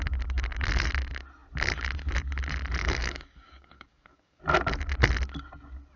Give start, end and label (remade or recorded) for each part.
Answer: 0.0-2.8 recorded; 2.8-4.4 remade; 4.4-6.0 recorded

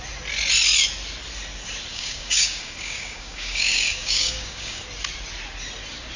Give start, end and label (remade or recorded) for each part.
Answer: 0.0-1.9 recorded; 1.9-4.8 remade; 4.8-6.2 recorded

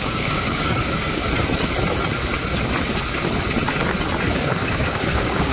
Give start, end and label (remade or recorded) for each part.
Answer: 0.0-1.2 remade; 1.2-4.3 recorded; 4.3-5.5 remade

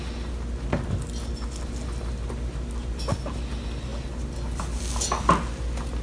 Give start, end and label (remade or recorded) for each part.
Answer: 0.0-6.0 recorded

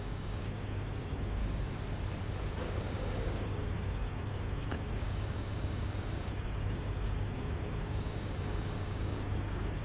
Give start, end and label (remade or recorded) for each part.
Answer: 0.0-1.4 remade; 1.4-2.6 recorded; 2.6-9.8 remade